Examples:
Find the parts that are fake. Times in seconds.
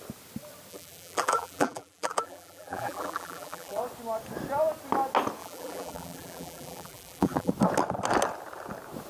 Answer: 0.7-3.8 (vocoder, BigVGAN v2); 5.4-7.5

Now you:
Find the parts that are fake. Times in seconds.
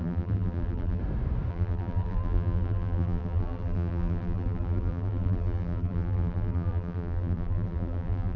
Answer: 0.0-1.0 (vocoder, BigVGAN v2); 1.5-8.4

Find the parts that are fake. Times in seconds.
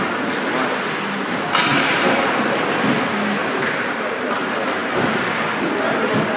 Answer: 1.7-2.4 (vocoder, BigVGAN v2); 3.4-4.3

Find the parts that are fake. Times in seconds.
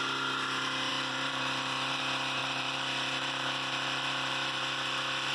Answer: 0.9-2.0 (vocoder, BigVGAN v2); 2.4-5.3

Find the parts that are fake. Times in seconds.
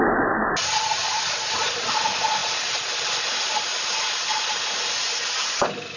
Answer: none